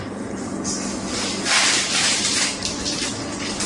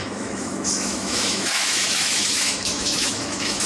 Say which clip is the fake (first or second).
second